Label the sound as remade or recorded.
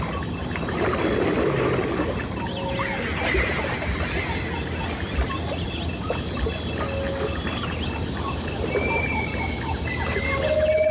recorded